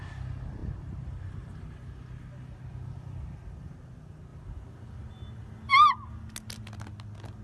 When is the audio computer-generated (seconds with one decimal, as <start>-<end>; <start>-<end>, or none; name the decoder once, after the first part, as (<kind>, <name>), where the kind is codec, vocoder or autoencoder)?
none